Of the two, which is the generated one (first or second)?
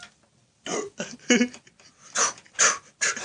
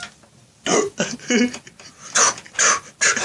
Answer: first